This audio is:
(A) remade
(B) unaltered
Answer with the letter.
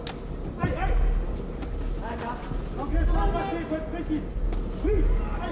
B